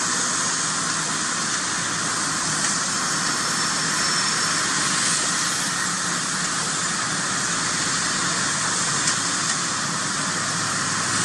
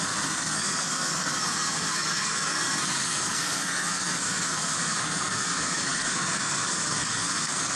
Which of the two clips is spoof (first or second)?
second